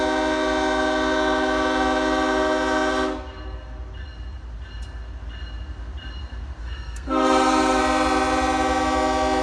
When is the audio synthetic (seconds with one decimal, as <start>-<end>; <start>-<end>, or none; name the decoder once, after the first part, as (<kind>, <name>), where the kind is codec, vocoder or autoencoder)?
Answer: 6.6-7.8 (codec, SNAC)